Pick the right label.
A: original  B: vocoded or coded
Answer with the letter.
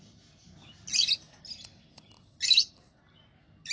A